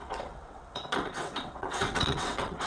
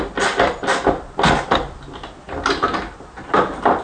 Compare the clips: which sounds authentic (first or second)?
second